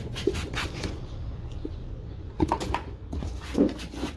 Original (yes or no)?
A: no